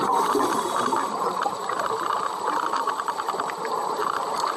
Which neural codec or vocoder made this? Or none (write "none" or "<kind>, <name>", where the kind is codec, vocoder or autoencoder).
vocoder, BigVGAN v2